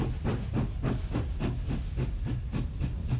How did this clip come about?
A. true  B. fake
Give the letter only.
A